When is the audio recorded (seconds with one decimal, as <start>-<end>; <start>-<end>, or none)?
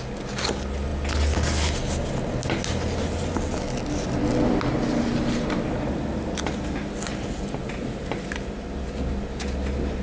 0.0-10.0